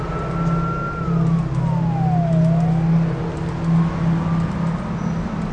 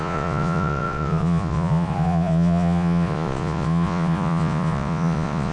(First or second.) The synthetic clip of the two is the second